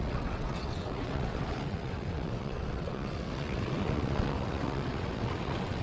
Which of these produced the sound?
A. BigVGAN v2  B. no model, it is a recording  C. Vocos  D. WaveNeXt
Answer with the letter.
D